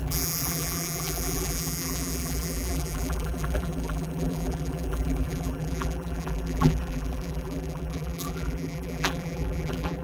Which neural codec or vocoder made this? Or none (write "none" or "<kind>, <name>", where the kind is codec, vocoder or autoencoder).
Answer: vocoder, BigVGAN v2